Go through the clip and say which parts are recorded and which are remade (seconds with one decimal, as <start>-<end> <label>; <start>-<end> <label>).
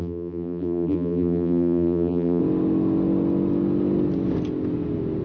0.0-2.4 remade; 2.4-5.2 recorded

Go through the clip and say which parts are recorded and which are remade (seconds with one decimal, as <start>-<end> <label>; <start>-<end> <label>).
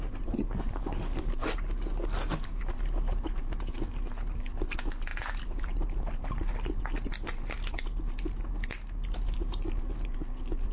0.0-5.1 recorded; 5.1-6.3 remade; 6.3-10.7 recorded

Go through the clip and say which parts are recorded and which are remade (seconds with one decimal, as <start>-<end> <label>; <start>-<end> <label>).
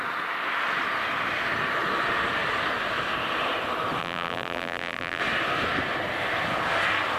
0.0-4.0 recorded; 4.0-5.2 remade; 5.2-7.2 recorded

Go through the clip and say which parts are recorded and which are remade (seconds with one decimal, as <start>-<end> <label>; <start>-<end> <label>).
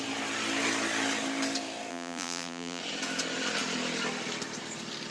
0.0-1.9 recorded; 1.9-2.8 remade; 2.8-5.1 recorded